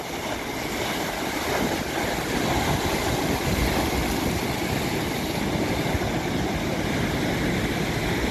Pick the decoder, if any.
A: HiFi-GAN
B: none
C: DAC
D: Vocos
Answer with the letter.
B